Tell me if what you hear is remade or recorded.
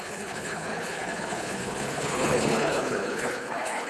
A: remade